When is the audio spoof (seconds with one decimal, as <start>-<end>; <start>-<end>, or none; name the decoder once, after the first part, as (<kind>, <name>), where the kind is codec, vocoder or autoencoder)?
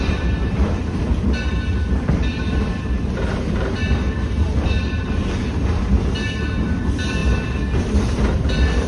none